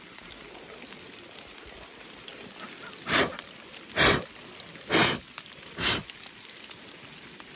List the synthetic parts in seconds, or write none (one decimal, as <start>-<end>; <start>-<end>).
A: none